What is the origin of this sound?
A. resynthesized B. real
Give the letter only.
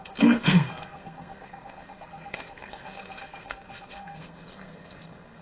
A